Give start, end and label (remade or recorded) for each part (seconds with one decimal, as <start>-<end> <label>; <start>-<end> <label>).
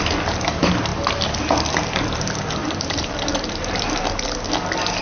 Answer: 0.0-2.6 recorded; 2.6-4.0 remade; 4.0-5.0 recorded